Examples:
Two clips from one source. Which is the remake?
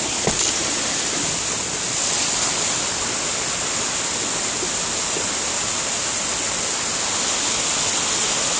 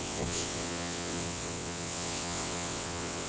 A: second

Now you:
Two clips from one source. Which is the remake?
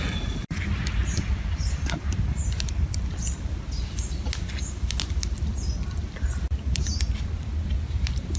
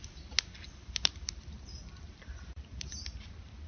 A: second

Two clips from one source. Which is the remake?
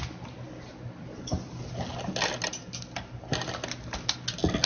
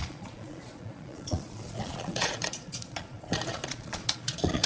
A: second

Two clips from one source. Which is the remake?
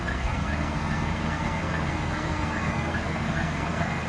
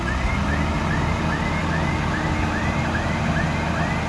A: first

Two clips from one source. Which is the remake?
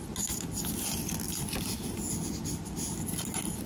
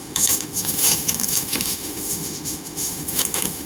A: second